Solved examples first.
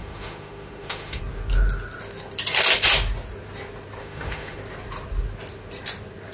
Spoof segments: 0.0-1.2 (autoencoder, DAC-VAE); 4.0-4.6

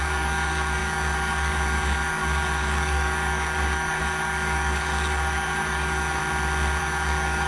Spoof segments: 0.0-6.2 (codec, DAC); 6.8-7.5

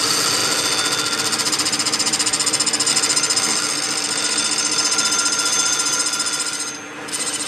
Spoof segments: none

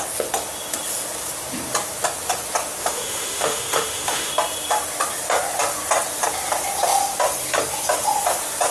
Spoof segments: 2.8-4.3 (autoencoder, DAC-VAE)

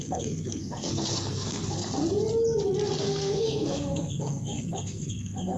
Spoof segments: 0.0-2.0 (codec, SNAC); 3.0-5.6

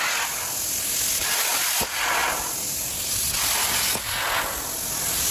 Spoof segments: none

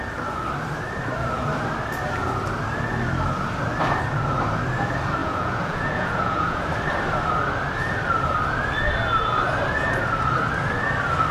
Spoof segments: 5.2-6.6 (vocoder, Vocos)

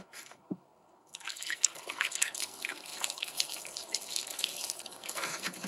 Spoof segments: 0.0-5.7 (codec, SNAC)